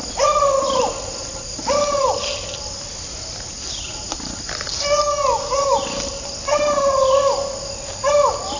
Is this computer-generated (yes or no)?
no